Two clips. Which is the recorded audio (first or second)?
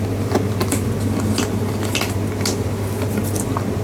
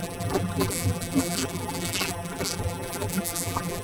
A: first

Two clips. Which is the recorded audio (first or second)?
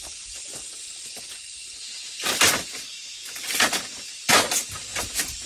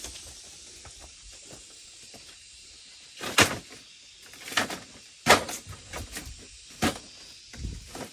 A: second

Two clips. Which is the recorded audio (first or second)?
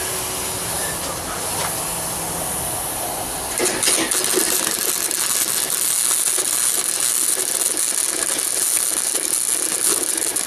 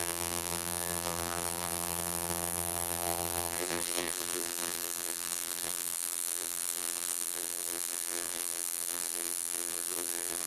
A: first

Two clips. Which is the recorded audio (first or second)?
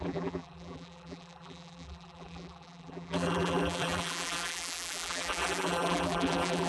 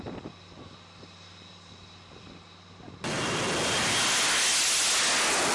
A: second